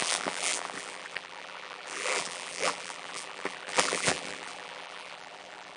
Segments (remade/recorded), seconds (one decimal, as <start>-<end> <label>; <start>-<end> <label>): 0.0-5.8 remade

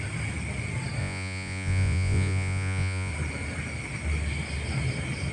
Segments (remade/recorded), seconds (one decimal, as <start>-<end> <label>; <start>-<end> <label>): 0.0-1.0 recorded; 1.0-3.1 remade; 3.1-5.3 recorded

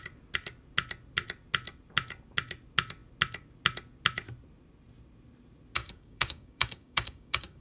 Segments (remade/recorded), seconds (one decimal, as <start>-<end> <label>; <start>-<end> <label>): 0.0-5.8 recorded; 5.8-7.6 remade

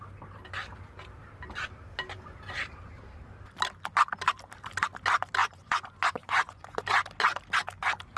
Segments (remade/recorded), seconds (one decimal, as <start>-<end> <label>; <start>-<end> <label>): 0.0-5.4 recorded; 5.4-6.8 remade; 6.8-8.2 recorded

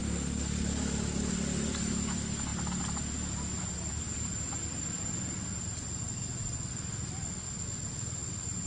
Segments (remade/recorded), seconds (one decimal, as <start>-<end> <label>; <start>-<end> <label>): 0.0-1.3 remade; 1.3-8.7 recorded

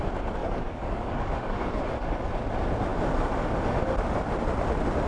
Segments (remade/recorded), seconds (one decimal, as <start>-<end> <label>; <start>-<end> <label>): 0.0-0.4 recorded; 0.4-2.3 remade; 2.3-5.1 recorded